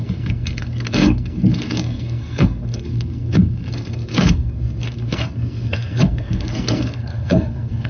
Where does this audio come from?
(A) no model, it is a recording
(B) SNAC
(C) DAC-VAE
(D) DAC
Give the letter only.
B